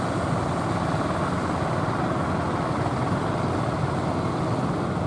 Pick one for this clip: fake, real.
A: real